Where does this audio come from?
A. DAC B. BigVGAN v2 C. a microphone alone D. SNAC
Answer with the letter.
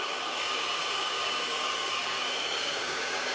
A